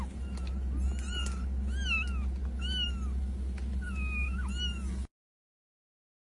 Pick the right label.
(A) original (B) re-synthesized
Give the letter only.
A